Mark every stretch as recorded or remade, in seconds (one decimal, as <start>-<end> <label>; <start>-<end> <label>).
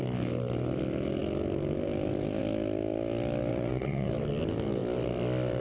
0.0-3.5 recorded; 3.5-4.1 remade; 4.1-5.6 recorded